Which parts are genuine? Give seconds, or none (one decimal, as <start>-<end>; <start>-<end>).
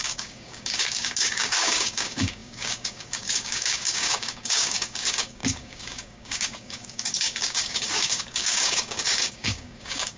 none